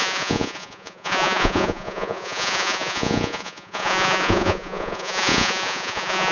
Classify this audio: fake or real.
fake